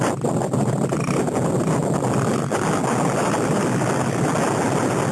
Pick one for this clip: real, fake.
real